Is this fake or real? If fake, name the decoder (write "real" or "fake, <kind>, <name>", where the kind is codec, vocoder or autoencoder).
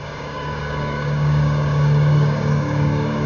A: fake, codec, DAC